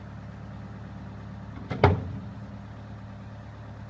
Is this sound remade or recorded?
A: recorded